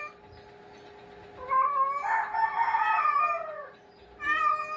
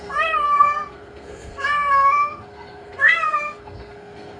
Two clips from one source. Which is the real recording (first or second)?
first